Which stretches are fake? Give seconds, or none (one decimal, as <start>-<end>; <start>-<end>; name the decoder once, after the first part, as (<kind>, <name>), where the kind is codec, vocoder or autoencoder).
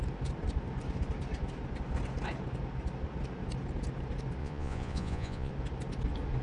4.4-5.5 (vocoder, Vocos)